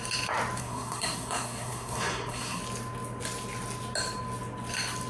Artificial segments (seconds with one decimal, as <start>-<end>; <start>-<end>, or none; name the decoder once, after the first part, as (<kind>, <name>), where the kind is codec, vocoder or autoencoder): 0.6-2.6 (codec, SNAC)